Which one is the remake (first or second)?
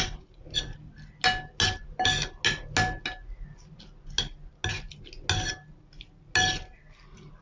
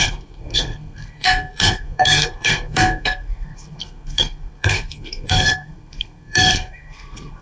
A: second